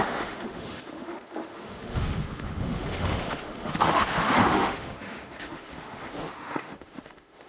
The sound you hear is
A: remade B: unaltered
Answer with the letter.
A